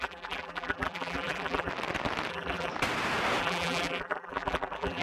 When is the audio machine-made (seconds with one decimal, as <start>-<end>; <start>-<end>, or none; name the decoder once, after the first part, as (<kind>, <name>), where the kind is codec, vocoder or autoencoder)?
0.0-1.7 (vocoder, BigVGAN v2); 2.3-2.7; 3.4-5.0

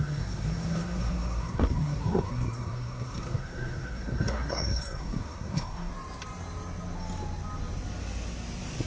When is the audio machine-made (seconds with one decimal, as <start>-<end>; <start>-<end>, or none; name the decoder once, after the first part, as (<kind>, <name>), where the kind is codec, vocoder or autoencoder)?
0.0-5.9 (codec, SNAC)

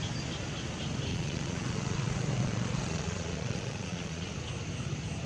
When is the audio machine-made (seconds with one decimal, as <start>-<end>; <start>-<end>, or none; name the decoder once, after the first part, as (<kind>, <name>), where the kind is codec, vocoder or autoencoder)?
1.1-4.3 (vocoder, Vocos)

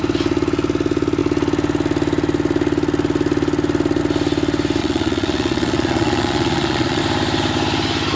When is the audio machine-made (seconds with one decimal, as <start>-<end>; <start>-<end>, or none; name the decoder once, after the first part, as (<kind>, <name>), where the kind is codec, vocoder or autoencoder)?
4.8-7.0 (vocoder, Vocos)

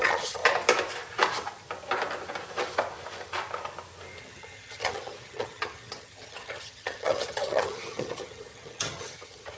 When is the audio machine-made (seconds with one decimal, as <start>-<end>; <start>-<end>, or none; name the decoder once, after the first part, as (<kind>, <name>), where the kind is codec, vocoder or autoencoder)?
0.0-0.4 (vocoder, HiFi-GAN); 4.2-9.6

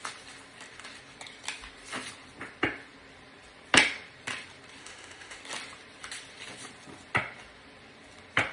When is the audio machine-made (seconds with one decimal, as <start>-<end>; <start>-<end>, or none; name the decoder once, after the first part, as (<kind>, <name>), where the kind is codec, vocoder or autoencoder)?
4.8-5.4 (autoencoder, DAC-VAE)

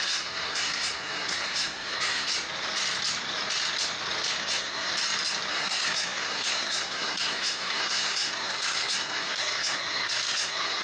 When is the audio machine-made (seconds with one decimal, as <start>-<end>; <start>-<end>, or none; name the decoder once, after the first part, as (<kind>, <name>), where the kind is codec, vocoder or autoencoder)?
0.0-2.3 (codec, SNAC); 4.4-4.9; 5.5-10.8

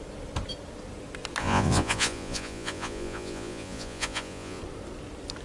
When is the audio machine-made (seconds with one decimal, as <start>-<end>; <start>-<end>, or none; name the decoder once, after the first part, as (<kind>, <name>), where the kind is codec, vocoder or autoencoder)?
1.4-4.6 (vocoder, Vocos)